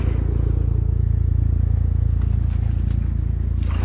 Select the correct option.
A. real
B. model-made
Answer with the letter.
A